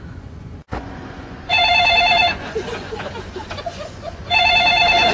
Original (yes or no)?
no